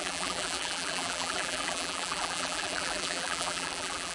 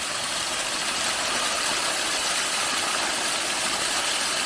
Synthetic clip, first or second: first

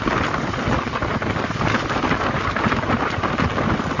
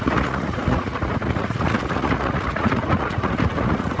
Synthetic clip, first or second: second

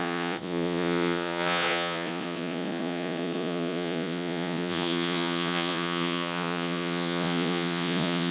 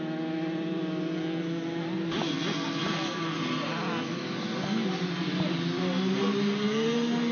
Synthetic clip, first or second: first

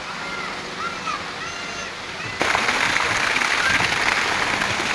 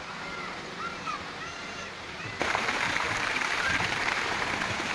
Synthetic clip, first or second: second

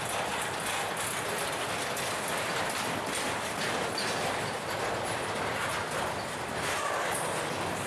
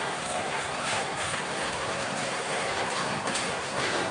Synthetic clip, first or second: second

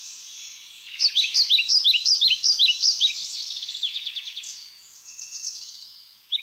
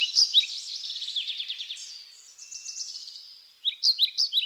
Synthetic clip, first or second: first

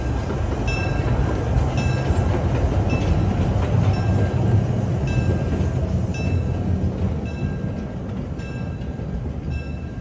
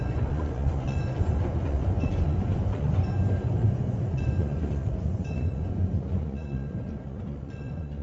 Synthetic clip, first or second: second